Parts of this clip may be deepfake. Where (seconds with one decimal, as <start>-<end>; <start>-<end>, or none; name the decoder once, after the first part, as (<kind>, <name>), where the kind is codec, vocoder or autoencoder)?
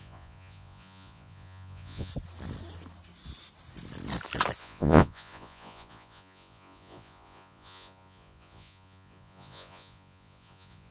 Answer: 0.0-2.1 (vocoder, Vocos); 4.6-10.9